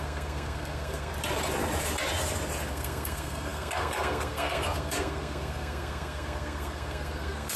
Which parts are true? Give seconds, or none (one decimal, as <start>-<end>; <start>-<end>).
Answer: 1.1-2.7